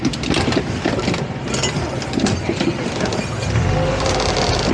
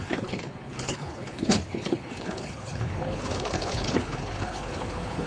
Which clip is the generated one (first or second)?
second